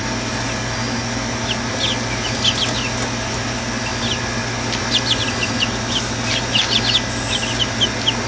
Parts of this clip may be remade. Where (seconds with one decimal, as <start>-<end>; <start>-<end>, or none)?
none